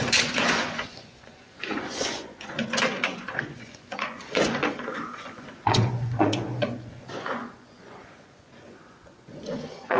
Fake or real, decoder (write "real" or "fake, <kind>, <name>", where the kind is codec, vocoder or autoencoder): fake, vocoder, Vocos